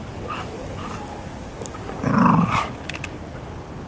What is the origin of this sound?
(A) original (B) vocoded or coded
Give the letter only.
A